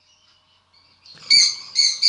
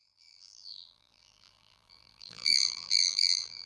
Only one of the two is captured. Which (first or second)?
first